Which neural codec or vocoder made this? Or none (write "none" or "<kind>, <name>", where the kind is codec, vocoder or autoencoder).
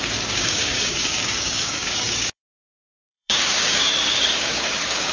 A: codec, DAC